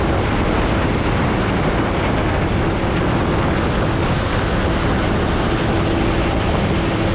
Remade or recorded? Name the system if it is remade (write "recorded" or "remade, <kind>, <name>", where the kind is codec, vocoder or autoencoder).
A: recorded